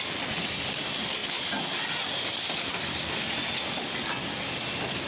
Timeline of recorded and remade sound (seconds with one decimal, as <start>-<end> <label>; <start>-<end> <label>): 0.0-5.1 recorded